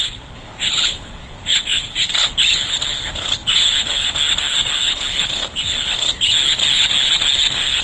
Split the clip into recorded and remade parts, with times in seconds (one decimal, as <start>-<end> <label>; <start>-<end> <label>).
0.0-7.8 remade